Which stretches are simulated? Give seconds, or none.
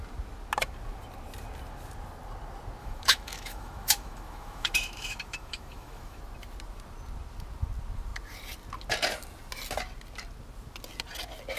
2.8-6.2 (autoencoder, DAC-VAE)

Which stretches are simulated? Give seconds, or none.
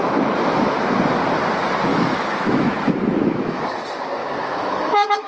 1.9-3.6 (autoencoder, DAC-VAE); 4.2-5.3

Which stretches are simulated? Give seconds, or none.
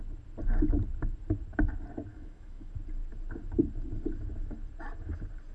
2.1-2.7 (autoencoder, DAC-VAE)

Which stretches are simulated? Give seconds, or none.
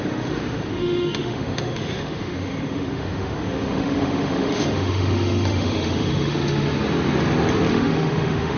0.0-6.7 (autoencoder, DAC-VAE); 7.7-8.6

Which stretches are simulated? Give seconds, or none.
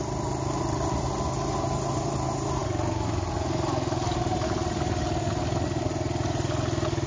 none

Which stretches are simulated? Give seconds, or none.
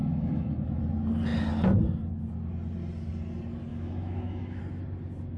0.0-0.8 (autoencoder, DAC-VAE); 3.7-4.6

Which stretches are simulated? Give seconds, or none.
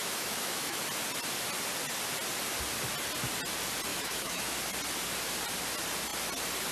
0.0-0.8 (autoencoder, DAC-VAE); 3.9-4.6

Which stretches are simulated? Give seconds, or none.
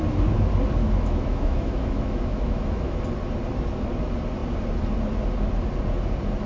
0.8-3.0 (autoencoder, DAC-VAE)